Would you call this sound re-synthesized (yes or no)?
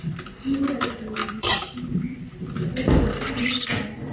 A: yes